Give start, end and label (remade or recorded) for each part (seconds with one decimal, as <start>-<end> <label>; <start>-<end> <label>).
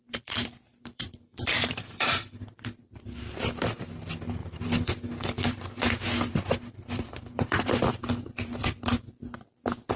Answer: 0.0-8.9 remade; 8.9-10.0 recorded